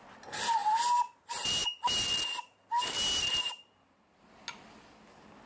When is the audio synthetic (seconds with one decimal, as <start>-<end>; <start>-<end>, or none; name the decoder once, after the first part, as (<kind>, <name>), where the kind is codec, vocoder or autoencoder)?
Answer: none